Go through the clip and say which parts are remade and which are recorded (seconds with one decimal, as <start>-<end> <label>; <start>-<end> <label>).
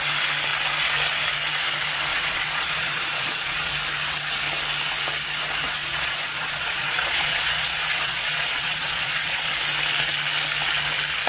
0.0-2.1 recorded; 2.1-3.7 remade; 3.7-5.8 recorded; 5.8-9.5 remade; 9.5-11.3 recorded